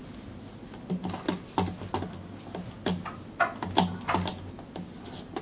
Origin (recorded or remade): recorded